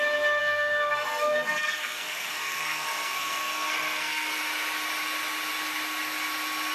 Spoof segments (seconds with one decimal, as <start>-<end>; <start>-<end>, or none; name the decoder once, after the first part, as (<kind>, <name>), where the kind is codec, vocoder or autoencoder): 0.4-4.4 (codec, SNAC)